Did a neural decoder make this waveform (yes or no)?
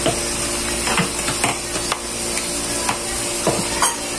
no